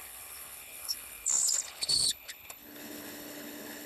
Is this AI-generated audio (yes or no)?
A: yes